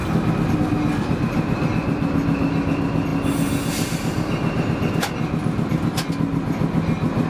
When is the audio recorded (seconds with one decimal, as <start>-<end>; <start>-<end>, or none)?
0.0-7.3